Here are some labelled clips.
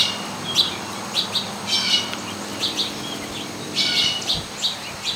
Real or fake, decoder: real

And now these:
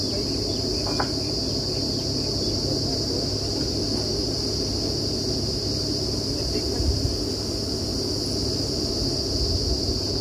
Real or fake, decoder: real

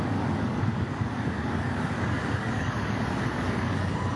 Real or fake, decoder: fake, codec, DAC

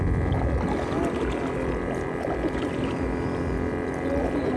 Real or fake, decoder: real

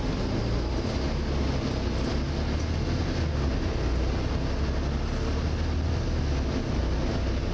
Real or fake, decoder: real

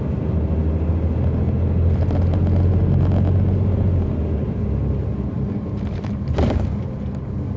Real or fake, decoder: real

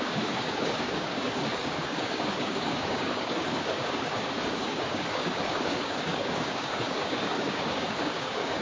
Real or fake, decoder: fake, codec, DAC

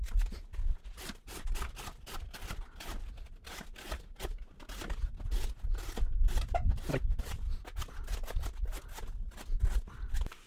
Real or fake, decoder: real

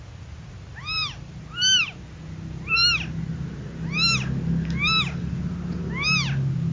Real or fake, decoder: real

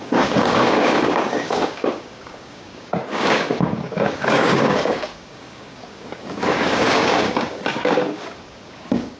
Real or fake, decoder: fake, codec, DAC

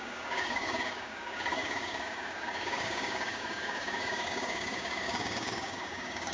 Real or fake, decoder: fake, codec, DAC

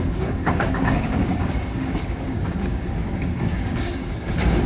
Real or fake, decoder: fake, codec, DAC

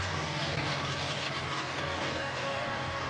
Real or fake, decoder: fake, codec, DAC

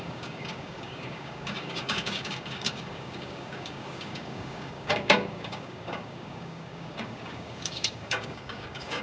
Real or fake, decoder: fake, codec, DAC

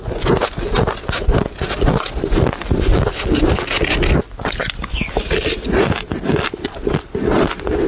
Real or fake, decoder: real